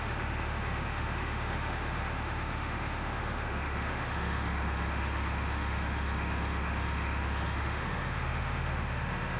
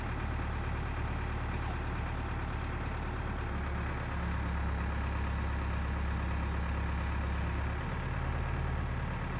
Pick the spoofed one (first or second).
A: first